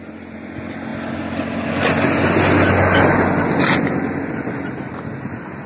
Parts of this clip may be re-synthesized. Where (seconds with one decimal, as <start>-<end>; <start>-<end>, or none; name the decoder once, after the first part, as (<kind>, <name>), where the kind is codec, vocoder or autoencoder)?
none